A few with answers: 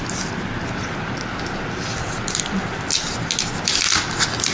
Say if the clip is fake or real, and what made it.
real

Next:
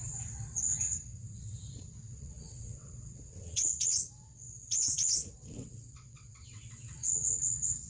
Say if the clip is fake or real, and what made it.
fake, vocoder, WaveNeXt